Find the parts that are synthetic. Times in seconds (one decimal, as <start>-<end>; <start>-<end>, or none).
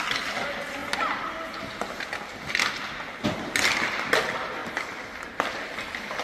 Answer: none